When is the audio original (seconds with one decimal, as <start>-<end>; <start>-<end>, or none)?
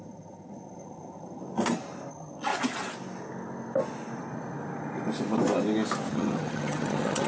1.4-2.1; 2.5-6.1